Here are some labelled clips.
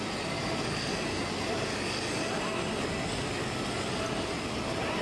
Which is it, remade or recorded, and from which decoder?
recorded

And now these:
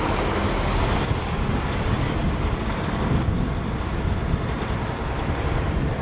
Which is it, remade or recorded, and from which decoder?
recorded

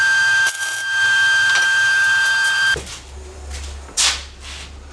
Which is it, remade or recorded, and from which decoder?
recorded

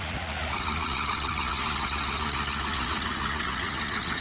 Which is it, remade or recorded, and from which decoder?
remade, vocoder, Vocos